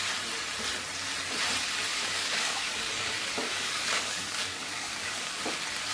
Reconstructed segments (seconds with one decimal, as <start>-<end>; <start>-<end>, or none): 1.9-5.4